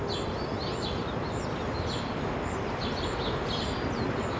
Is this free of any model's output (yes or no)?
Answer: yes